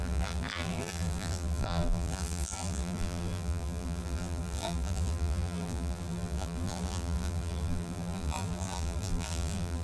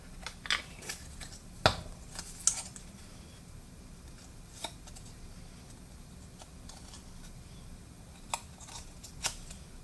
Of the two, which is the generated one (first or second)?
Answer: first